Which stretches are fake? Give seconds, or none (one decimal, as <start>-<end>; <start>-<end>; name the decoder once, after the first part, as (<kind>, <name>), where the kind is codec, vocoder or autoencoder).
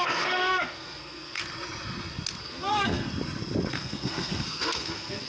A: 0.0-1.4 (codec, SNAC); 2.4-3.0; 3.7-5.3